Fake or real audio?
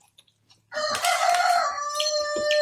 real